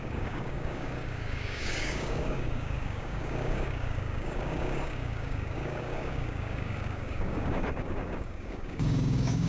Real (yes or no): no